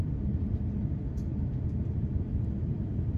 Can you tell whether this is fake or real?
fake